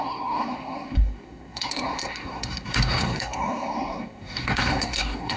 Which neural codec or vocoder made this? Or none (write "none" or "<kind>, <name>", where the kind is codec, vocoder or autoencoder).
codec, SNAC